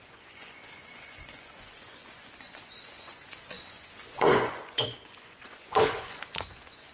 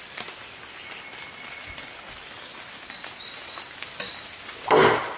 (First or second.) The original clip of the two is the second